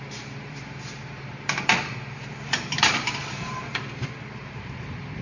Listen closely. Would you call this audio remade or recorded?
remade